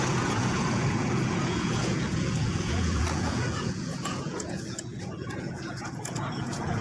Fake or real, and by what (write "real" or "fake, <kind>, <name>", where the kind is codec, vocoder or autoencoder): fake, vocoder, Vocos